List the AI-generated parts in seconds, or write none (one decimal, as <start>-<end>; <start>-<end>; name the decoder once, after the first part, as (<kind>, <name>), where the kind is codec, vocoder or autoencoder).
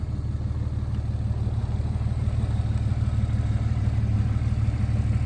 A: 1.6-4.8 (vocoder, BigVGAN v2)